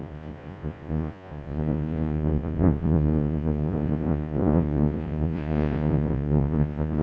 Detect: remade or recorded remade